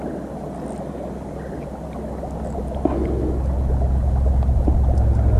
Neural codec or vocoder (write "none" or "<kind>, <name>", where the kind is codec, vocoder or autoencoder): none